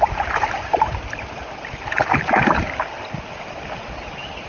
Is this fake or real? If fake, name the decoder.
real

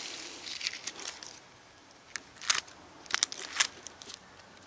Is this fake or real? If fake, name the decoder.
real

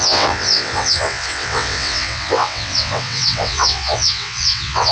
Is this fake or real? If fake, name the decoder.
fake, vocoder, WaveNeXt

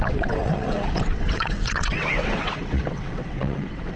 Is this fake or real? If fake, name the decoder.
fake, vocoder, WaveNeXt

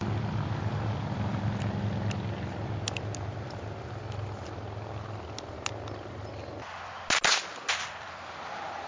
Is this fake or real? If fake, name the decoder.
real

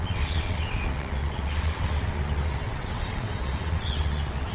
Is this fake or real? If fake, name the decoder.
fake, vocoder, WaveNeXt